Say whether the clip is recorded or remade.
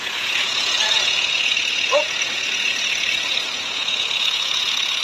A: remade